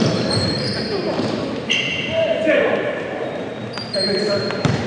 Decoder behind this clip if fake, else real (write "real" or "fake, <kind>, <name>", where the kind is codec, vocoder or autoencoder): fake, vocoder, BigVGAN v2